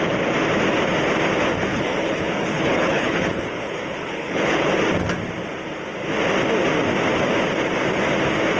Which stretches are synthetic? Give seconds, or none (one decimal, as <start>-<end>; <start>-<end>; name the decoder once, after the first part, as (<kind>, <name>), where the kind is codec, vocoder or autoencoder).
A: 1.7-4.7 (codec, HILCodec)